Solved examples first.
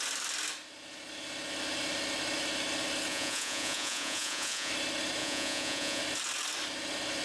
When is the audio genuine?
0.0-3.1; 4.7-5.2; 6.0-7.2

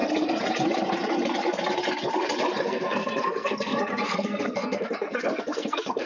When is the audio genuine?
0.0-2.6

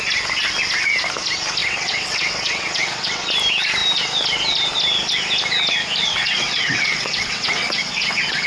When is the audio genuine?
0.0-1.6; 3.3-6.0

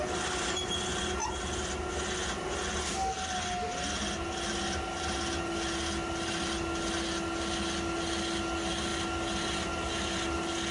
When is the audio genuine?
0.0-10.7

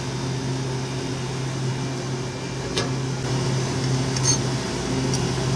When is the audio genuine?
0.0-5.6

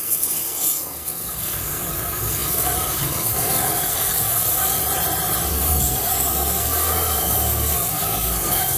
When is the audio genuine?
4.8-5.5